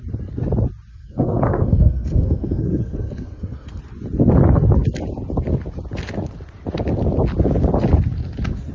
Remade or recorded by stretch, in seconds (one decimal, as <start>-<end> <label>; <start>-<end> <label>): 0.0-0.9 recorded; 0.9-3.8 remade; 3.8-8.7 recorded